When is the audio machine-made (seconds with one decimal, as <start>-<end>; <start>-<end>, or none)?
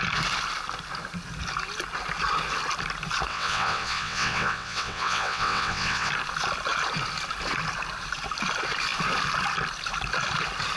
3.3-6.1